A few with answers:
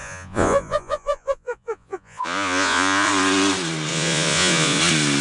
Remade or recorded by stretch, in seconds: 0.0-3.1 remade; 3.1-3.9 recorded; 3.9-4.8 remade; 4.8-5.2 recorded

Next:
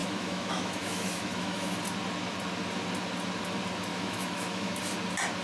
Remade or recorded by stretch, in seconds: 0.0-1.8 remade; 1.8-3.9 recorded; 3.9-4.8 remade; 4.8-5.4 recorded

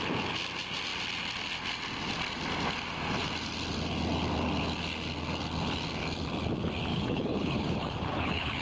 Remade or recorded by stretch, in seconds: 0.0-6.9 recorded; 6.9-8.6 remade

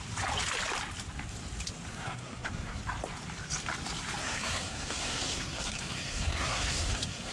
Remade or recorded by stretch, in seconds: 0.0-1.9 recorded; 1.9-2.8 remade; 2.8-4.2 recorded; 4.2-7.3 remade